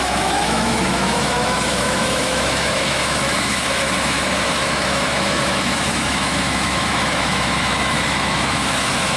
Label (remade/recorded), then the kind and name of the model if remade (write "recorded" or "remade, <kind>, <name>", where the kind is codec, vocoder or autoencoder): remade, autoencoder, DAC-VAE